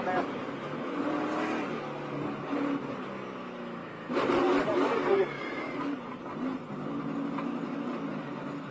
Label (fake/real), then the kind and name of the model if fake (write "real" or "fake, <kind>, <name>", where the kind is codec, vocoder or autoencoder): real